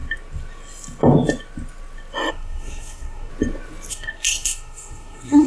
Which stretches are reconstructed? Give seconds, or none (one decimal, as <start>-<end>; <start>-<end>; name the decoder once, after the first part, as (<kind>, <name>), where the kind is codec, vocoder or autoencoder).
2.3-3.3 (codec, SNAC); 3.9-5.5